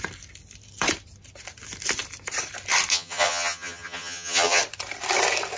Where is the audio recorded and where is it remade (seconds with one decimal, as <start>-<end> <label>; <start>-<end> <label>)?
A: 0.0-2.9 recorded; 2.9-4.6 remade; 4.6-5.6 recorded